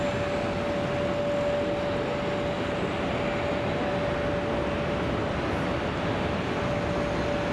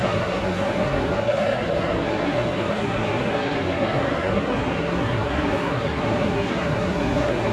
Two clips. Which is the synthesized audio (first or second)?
second